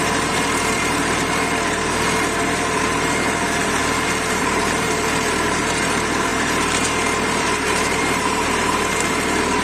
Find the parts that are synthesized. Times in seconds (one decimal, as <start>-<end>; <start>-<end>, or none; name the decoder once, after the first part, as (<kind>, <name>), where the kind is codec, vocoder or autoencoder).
0.0-3.8 (vocoder, BigVGAN v2); 4.4-9.6